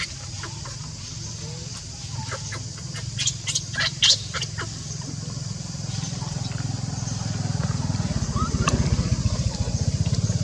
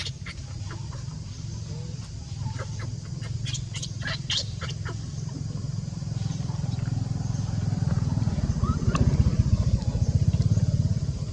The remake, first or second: second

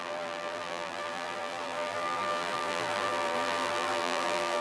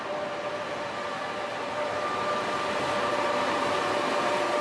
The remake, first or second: first